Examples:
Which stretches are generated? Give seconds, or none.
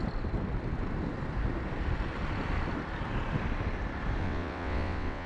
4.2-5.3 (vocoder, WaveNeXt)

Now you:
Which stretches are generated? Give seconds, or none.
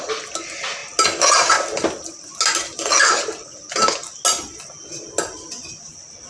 none